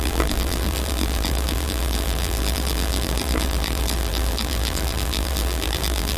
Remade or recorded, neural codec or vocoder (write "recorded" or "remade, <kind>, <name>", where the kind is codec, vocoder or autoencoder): remade, vocoder, BigVGAN v2